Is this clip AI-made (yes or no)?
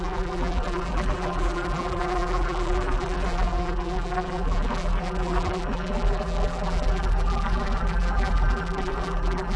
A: yes